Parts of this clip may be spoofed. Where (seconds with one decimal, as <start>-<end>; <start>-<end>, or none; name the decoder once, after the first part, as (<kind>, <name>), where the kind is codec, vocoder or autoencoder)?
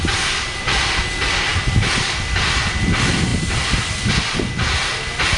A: none